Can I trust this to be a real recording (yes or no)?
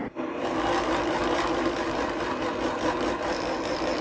yes